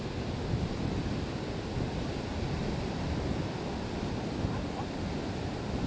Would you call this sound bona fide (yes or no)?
yes